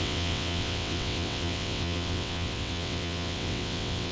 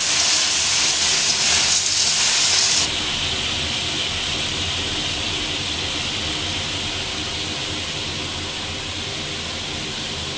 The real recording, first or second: second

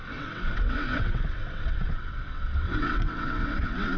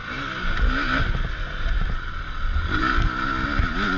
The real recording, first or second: second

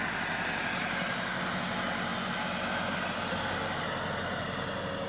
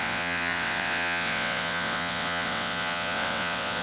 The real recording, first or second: first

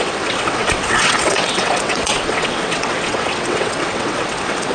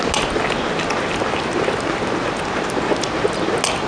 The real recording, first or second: second